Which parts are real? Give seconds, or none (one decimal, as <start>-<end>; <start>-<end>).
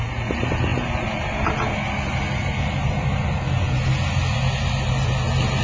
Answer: 0.0-5.6